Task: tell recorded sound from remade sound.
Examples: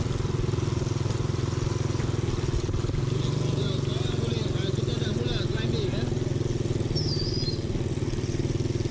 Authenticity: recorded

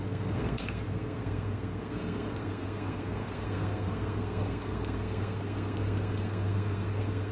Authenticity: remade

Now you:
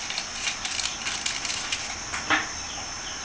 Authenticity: recorded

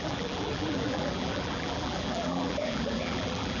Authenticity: remade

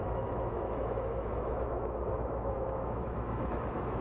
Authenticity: remade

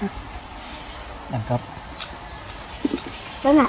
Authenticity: recorded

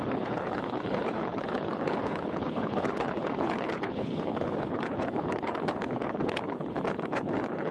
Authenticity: remade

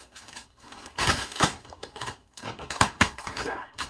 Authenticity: remade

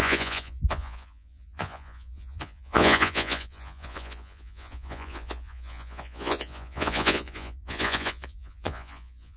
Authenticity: remade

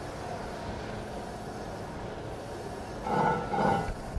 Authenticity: recorded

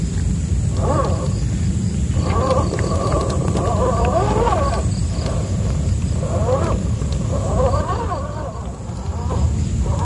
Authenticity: recorded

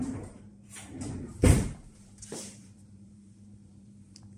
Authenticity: remade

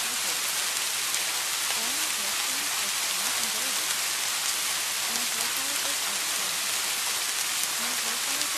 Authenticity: recorded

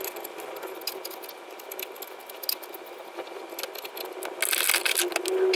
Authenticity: recorded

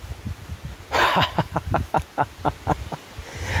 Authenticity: recorded